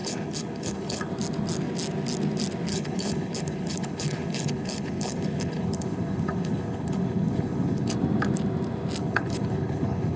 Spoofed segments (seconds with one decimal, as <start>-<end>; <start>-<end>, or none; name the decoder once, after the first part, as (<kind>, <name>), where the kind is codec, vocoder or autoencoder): 0.0-1.1 (codec, HILCodec); 2.7-7.9; 9.0-10.2